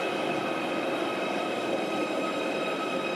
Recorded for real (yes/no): no